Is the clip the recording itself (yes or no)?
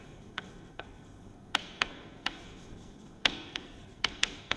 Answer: no